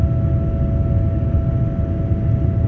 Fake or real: real